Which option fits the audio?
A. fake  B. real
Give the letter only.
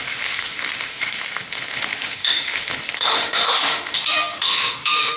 A